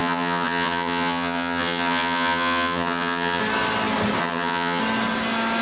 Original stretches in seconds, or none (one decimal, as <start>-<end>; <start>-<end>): 3.4-4.2; 4.8-5.6